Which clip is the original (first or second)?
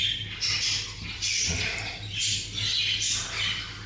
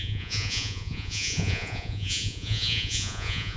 first